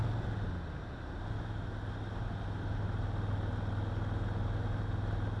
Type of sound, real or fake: real